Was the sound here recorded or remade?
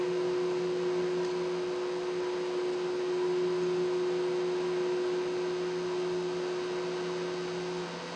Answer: recorded